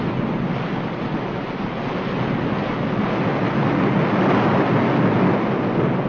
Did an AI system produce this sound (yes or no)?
no